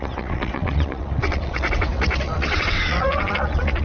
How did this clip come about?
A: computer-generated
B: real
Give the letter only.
A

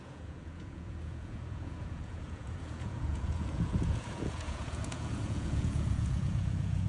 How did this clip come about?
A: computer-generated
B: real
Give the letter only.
A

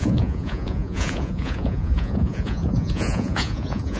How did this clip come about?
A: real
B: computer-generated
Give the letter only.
B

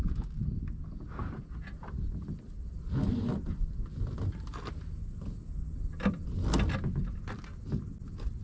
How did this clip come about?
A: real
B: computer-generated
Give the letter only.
A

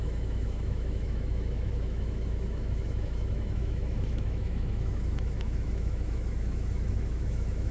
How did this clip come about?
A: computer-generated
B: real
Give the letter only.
A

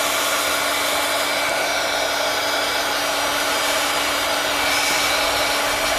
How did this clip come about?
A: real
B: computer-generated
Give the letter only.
A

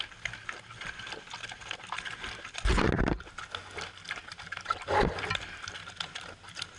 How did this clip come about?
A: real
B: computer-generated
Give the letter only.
A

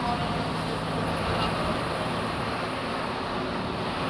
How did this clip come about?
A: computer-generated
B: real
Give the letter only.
B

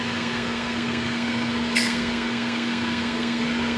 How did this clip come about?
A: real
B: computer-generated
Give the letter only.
B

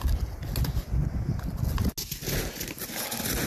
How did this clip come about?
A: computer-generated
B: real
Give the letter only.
B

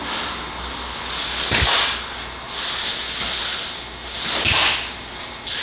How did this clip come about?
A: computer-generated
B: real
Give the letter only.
B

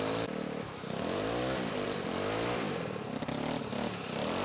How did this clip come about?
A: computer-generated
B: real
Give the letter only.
B